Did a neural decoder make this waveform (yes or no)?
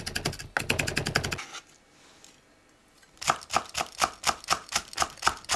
no